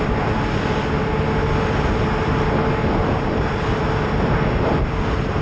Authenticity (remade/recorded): recorded